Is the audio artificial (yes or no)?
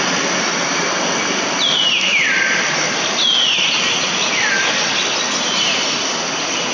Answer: no